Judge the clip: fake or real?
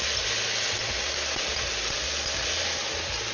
real